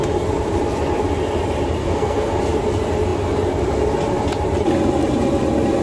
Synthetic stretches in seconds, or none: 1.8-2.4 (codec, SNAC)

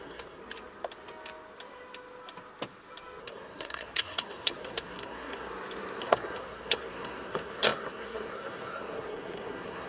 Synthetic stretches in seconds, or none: 0.0-0.4 (codec, SNAC); 3.2-5.5; 6.0-9.9

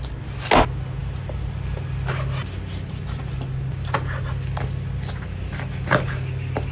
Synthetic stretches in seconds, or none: none

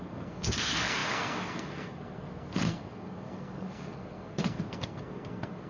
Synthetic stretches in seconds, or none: 0.0-5.7 (codec, SNAC)

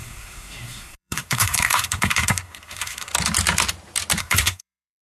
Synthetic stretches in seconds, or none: 0.0-3.1 (codec, SNAC); 4.2-5.2

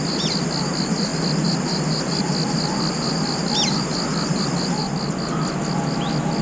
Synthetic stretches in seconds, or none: none

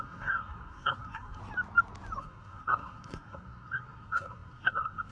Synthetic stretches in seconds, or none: 0.0-1.4 (codec, SNAC); 2.2-5.1

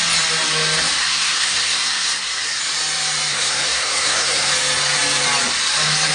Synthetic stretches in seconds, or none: 1.0-2.6 (codec, SNAC); 3.3-4.5